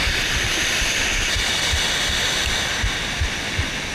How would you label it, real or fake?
real